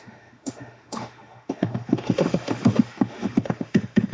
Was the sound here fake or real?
fake